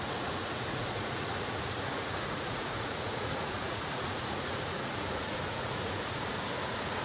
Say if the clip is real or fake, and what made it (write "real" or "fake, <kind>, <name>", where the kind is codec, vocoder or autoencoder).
fake, vocoder, Vocos